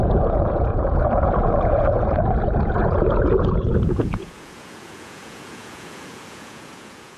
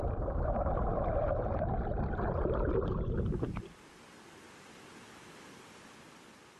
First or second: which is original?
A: second